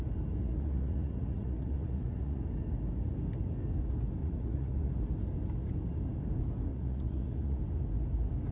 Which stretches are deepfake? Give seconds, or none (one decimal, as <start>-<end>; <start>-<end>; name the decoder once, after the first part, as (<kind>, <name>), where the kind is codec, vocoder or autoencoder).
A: 0.4-2.4 (vocoder, Vocos); 4.2-4.9; 6.7-7.6